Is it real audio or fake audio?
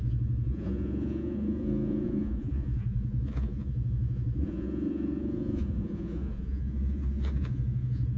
fake